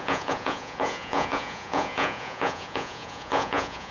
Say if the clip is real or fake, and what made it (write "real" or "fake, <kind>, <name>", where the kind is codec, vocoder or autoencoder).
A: fake, vocoder, Vocos